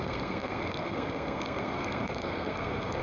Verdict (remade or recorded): remade